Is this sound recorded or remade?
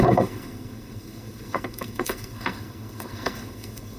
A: remade